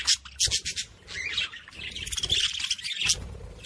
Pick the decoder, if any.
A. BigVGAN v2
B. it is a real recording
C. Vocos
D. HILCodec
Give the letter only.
B